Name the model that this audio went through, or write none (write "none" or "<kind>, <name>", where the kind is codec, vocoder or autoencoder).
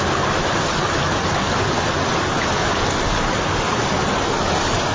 none